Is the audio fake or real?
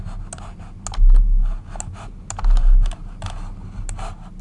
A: real